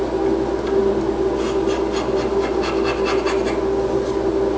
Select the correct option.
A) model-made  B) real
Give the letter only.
B